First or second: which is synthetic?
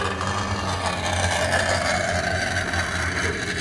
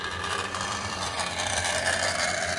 second